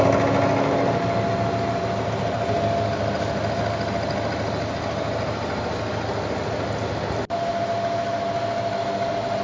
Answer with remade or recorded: recorded